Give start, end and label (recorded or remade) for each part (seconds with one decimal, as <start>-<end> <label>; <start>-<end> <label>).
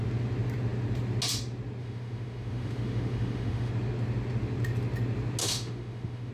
0.0-1.8 recorded; 1.8-3.7 remade; 3.7-5.4 recorded; 5.4-6.3 remade